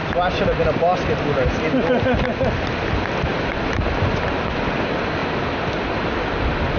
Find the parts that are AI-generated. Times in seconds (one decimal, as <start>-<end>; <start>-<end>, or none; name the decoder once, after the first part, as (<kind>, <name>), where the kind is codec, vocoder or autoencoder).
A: none